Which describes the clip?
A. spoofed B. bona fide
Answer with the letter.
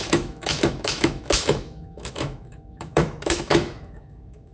A